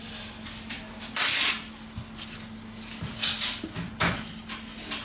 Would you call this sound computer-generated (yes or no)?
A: no